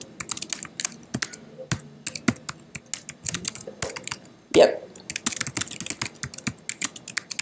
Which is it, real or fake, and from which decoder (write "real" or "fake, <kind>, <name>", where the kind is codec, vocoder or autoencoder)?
real